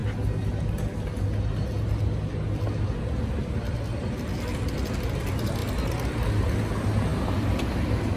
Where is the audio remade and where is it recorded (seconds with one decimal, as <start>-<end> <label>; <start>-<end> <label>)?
0.0-8.2 recorded